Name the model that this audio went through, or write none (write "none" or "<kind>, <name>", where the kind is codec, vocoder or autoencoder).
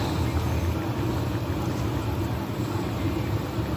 none